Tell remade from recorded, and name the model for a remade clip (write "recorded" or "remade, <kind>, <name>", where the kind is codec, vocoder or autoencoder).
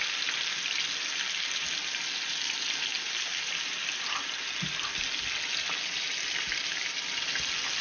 recorded